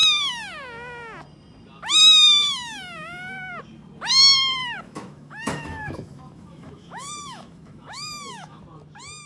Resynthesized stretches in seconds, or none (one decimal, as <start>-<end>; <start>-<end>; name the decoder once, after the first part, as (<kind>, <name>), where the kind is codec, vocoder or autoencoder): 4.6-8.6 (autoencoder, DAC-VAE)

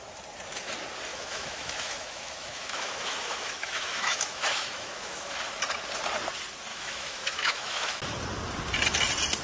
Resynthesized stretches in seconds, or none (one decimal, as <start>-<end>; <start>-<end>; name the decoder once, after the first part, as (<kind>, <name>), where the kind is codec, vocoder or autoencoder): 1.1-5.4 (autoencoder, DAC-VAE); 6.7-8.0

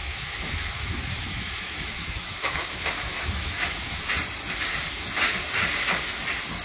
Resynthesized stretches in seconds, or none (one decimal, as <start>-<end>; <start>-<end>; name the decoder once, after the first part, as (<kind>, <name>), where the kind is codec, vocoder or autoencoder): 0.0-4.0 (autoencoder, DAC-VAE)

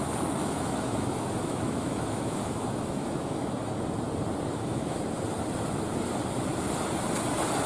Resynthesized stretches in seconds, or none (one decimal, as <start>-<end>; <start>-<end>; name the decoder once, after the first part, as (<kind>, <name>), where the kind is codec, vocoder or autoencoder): 0.4-3.5 (autoencoder, DAC-VAE); 4.5-5.0

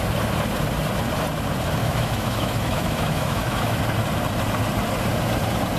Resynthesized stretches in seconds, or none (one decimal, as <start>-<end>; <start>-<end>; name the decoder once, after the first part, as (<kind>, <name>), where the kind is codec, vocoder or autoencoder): 1.8-3.8 (autoencoder, DAC-VAE)